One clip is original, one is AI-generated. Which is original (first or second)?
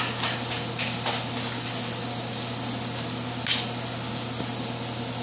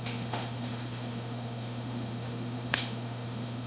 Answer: first